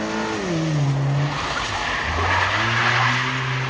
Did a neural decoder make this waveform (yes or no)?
no